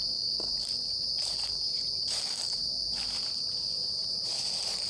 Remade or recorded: remade